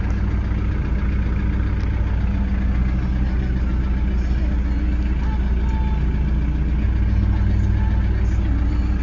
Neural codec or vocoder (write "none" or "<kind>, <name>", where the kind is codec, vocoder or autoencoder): none